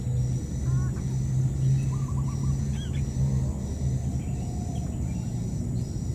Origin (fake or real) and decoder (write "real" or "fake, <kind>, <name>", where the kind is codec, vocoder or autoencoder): real